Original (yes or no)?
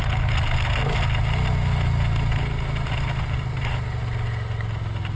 yes